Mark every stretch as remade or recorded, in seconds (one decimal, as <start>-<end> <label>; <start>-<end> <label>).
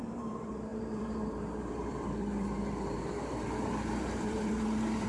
0.0-5.1 remade